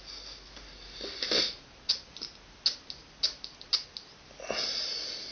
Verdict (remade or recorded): recorded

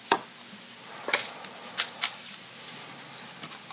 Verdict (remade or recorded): recorded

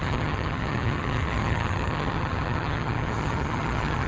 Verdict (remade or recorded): remade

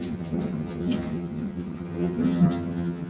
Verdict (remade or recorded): remade